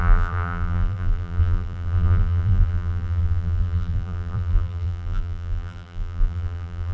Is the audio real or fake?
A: fake